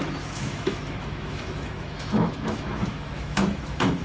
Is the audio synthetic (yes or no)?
yes